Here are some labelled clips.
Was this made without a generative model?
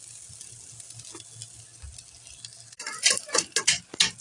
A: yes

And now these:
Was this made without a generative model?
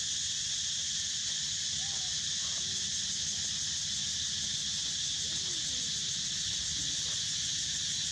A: yes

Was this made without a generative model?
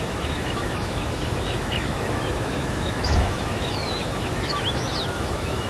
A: no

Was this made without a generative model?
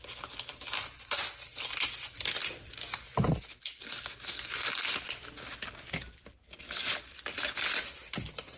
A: yes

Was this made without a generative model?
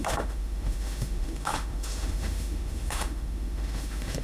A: no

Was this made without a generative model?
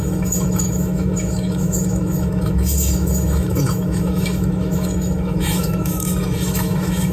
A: no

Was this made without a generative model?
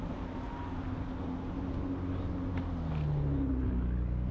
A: yes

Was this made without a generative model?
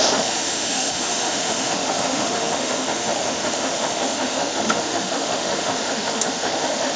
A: no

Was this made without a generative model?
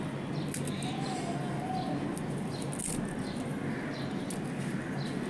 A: yes